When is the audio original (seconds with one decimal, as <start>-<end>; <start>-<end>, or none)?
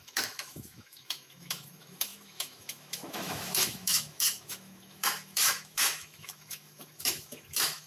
none